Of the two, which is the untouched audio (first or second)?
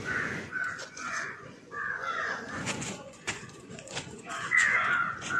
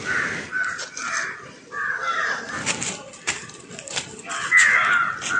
second